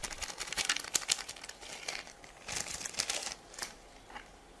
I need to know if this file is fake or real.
real